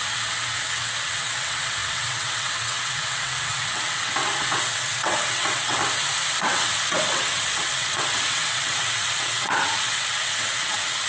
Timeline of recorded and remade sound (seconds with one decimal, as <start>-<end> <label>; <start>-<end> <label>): 0.0-5.8 remade; 5.8-6.4 recorded; 6.4-11.1 remade